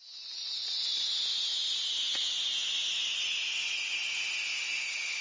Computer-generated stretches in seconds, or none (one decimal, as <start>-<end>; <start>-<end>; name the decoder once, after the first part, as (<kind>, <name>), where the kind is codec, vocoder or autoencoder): none